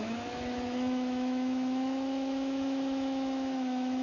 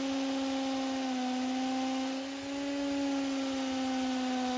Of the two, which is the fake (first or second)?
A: first